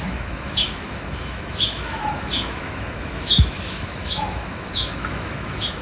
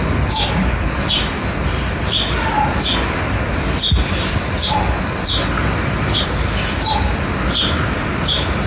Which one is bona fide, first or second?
second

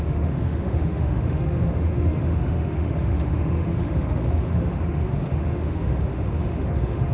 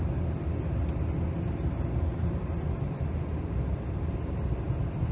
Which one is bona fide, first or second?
second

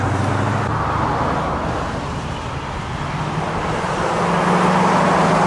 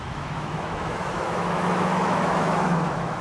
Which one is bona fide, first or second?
first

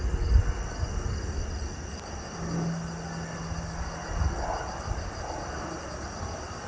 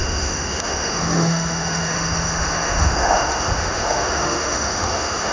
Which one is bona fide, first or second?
first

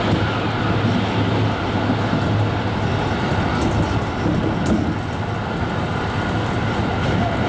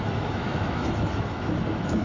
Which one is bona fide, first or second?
first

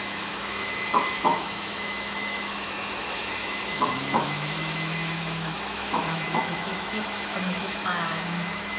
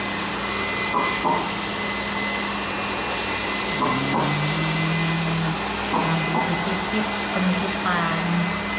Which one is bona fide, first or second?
second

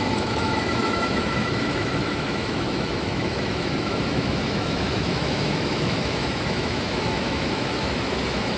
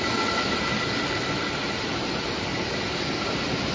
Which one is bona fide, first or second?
second